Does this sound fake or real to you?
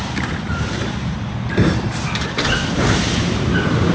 fake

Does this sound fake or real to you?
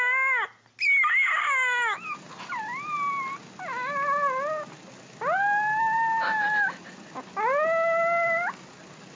real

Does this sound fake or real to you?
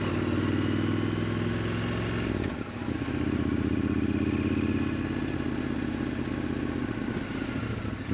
real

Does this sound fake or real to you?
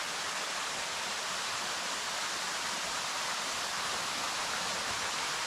real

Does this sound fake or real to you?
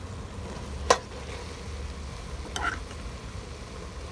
real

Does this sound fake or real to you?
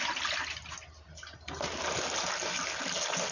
real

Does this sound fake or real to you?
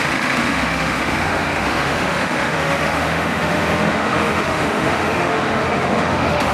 fake